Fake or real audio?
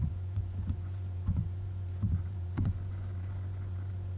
fake